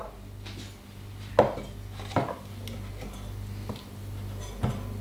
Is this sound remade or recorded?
recorded